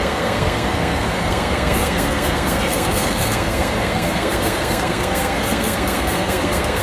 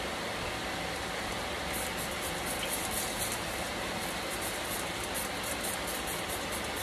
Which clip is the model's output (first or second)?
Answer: first